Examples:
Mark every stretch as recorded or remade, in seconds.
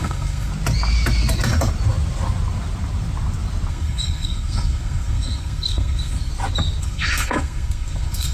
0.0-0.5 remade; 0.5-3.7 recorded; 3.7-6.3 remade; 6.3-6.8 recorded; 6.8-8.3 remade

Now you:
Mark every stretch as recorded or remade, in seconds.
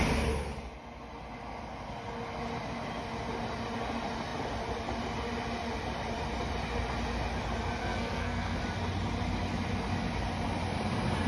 0.0-7.8 recorded; 7.8-8.6 remade; 8.6-11.3 recorded